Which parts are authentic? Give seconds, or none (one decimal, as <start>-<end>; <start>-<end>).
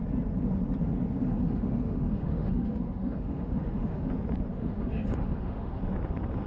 0.0-1.2; 4.1-4.5; 5.8-6.5